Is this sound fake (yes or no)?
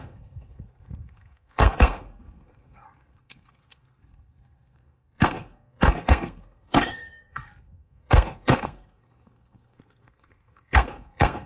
yes